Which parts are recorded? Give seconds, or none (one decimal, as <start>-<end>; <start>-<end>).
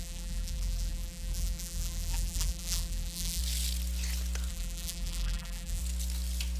3.4-4.5; 5.8-6.6